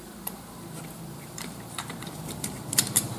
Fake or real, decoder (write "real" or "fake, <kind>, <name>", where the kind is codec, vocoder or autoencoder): fake, vocoder, BigVGAN v2